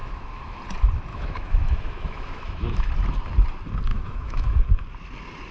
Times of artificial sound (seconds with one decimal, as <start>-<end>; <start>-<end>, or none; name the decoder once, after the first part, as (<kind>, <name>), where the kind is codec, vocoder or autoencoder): 0.0-0.6 (autoencoder, DAC-VAE); 1.1-2.9; 3.9-4.6